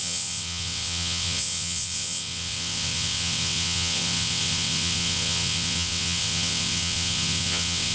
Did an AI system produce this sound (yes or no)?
yes